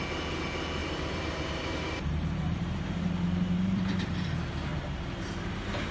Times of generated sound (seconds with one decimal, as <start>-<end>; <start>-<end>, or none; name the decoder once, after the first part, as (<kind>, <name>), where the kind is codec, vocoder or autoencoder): 0.8-4.3 (vocoder, BigVGAN v2); 4.7-5.5

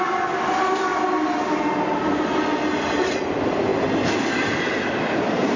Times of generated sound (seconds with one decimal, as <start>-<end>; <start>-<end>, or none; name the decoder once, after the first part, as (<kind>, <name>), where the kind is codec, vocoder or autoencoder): 0.0-0.9 (vocoder, BigVGAN v2); 3.2-3.7; 4.4-5.6

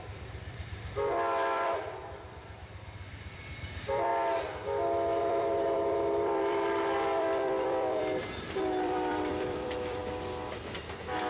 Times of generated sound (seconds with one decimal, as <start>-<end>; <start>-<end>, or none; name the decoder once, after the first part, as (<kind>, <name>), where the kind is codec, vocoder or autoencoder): 0.0-4.1 (vocoder, BigVGAN v2); 5.2-10.0